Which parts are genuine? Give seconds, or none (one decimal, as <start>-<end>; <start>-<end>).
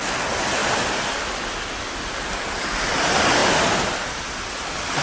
0.0-5.0